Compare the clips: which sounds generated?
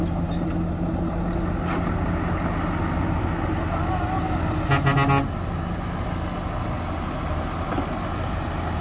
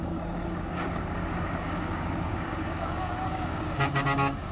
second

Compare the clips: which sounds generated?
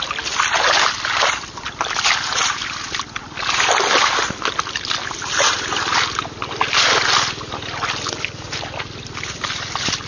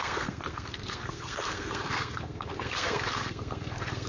second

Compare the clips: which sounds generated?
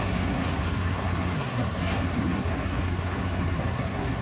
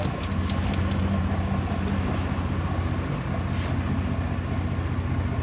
first